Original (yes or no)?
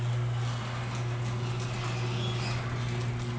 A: yes